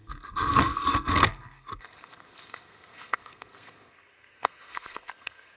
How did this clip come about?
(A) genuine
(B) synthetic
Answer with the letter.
B